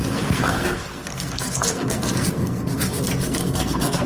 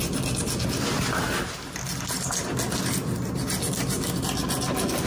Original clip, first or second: second